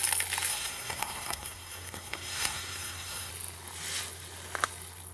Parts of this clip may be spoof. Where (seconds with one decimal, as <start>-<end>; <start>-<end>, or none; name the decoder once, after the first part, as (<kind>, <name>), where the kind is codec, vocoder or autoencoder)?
0.5-3.3 (codec, SNAC)